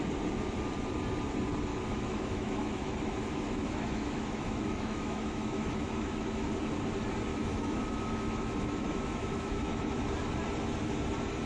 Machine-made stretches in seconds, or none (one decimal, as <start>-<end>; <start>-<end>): 1.7-6.5; 7.3-10.1